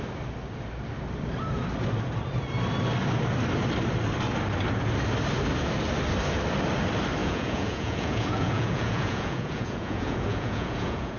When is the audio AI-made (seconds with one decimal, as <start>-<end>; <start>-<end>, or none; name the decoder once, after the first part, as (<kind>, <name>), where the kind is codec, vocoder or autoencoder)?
7.2-11.2 (vocoder, Vocos)